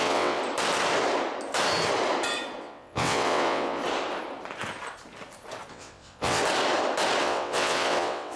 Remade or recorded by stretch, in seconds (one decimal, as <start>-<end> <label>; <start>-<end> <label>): 0.0-0.4 remade; 0.4-2.6 recorded; 2.6-3.8 remade; 3.8-5.7 recorded; 5.7-6.4 remade; 6.4-7.2 recorded; 7.2-8.4 remade